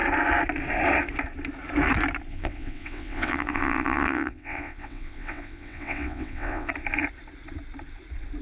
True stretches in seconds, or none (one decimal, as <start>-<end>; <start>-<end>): 0.0-2.3; 6.7-8.4